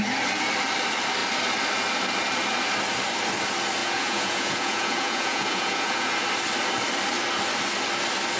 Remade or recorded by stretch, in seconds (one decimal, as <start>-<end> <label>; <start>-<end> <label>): 0.0-3.8 recorded; 3.8-6.1 remade; 6.1-8.4 recorded